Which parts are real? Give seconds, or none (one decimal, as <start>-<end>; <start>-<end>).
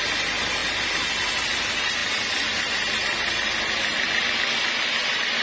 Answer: 0.0-5.4